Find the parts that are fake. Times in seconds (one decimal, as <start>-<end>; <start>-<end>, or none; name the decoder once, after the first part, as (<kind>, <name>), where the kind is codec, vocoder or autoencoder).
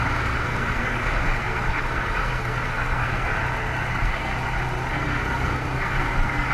0.0-3.3 (codec, SNAC); 3.9-4.3; 4.9-6.5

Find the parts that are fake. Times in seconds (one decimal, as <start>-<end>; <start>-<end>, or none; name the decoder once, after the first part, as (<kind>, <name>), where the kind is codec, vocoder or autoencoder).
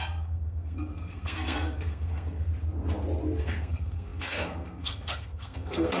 0.0-2.5 (codec, SNAC); 3.4-6.0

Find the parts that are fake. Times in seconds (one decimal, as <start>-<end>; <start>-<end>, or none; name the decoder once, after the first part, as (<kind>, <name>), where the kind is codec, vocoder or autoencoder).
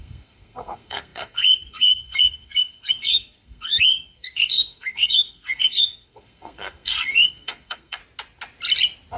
0.0-8.0 (codec, SNAC)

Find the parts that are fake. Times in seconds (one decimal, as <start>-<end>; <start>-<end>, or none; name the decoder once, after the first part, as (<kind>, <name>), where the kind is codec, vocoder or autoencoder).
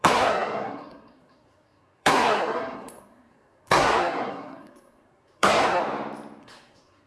0.0-5.8 (codec, SNAC); 6.4-7.1